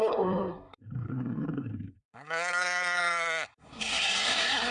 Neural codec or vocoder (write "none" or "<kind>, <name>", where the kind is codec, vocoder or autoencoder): codec, SNAC